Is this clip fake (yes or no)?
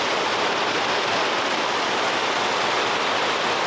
no